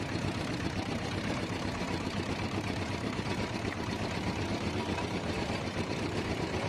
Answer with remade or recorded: remade